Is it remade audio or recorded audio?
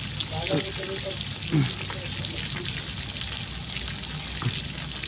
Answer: recorded